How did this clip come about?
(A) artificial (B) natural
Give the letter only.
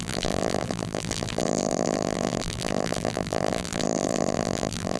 A